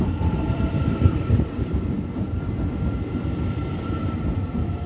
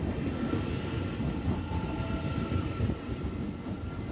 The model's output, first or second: first